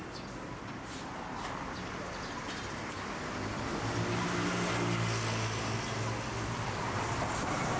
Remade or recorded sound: recorded